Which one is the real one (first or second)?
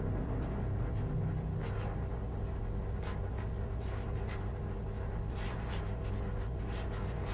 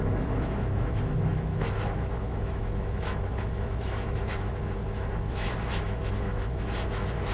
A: first